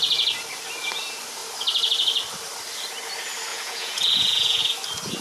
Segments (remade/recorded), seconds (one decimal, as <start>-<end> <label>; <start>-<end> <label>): 0.0-3.5 recorded; 3.5-4.6 remade; 4.6-5.2 recorded